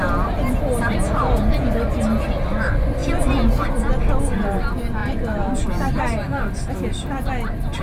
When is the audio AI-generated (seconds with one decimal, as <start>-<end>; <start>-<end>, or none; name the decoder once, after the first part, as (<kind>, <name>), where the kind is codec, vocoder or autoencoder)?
5.0-6.0 (vocoder, BigVGAN v2)